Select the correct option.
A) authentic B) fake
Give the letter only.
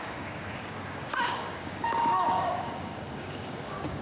B